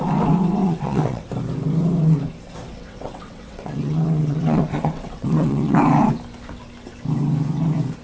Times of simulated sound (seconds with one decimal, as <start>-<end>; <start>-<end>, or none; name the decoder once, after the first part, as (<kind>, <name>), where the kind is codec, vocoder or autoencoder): 0.6-1.3 (vocoder, WaveNeXt); 2.7-5.8